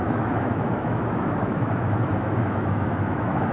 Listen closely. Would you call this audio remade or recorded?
remade